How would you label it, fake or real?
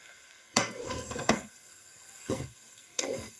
fake